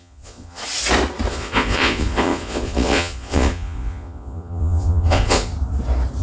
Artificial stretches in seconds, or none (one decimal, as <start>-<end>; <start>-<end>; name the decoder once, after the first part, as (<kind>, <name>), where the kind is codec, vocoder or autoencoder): 0.0-0.6 (vocoder, Vocos); 1.3-5.5